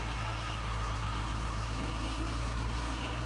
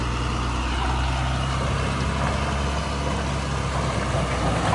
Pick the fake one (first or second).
first